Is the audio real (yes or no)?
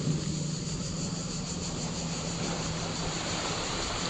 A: no